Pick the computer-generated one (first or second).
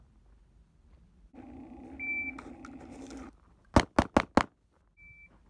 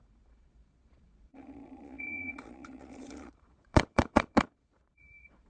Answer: second